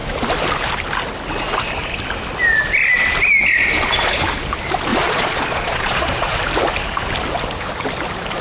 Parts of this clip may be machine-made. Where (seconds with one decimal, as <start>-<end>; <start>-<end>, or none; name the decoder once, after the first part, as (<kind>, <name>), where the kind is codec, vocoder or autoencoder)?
4.9-6.4 (vocoder, Vocos)